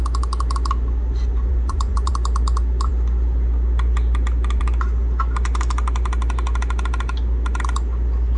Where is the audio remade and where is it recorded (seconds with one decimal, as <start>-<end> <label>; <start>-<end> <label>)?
0.0-1.5 recorded; 1.5-2.1 remade; 2.1-8.4 recorded